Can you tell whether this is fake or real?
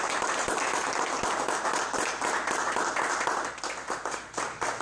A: real